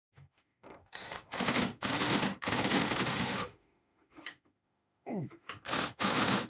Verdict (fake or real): fake